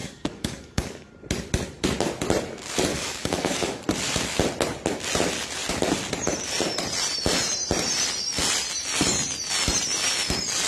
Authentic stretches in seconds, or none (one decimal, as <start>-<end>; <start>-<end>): 1.1-2.9; 3.8-10.7